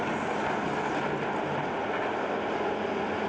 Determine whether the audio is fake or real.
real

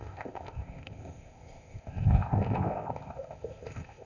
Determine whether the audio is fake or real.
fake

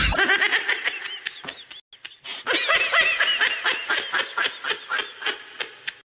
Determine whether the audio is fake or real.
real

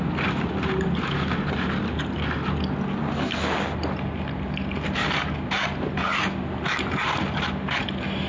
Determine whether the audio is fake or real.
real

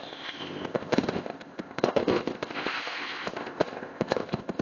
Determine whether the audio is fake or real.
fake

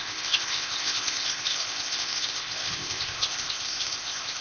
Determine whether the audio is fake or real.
fake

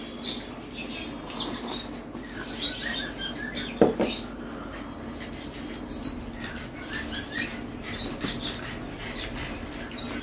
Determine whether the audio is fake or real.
real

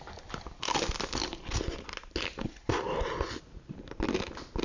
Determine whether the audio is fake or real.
real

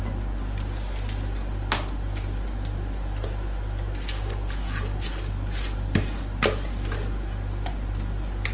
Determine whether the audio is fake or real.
real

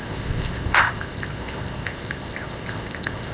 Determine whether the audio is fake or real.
fake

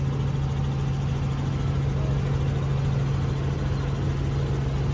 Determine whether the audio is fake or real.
real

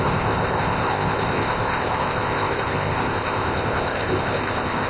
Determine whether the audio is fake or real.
fake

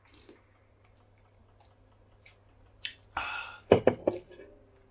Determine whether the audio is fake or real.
real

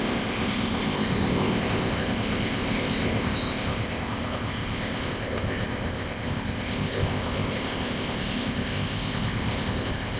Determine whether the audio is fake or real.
fake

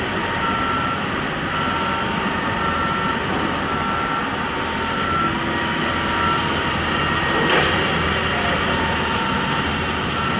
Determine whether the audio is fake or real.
real